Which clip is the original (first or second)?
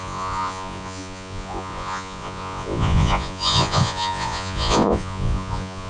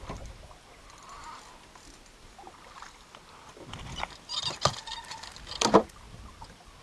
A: second